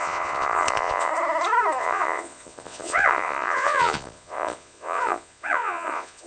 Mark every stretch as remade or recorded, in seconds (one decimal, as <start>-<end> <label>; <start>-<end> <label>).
0.0-1.1 remade; 1.1-1.8 recorded; 1.8-6.3 remade